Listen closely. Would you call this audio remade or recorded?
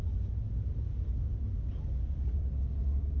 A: recorded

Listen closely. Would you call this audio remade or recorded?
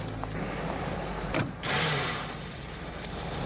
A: recorded